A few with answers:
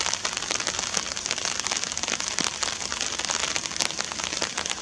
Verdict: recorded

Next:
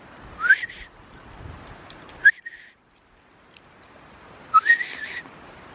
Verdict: recorded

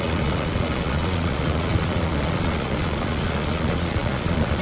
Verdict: remade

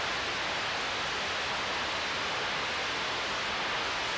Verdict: recorded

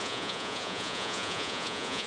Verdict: remade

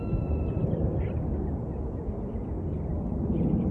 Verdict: recorded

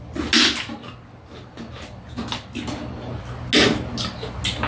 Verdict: recorded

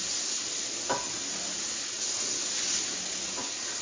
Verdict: recorded